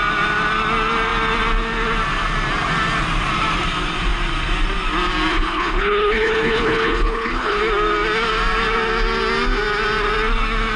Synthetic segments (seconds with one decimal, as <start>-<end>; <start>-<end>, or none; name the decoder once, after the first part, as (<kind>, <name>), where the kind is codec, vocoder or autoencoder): 5.3-7.6 (codec, HILCodec)

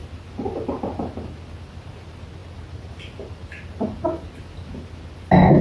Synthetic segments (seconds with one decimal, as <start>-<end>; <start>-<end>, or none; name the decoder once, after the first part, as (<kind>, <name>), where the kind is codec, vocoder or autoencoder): none

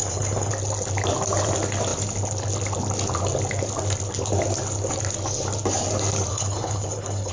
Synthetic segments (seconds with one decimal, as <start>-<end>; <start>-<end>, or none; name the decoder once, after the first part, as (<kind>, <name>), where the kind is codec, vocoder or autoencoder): 0.0-0.5 (codec, HILCodec); 6.3-7.3